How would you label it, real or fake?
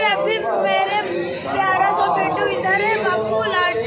fake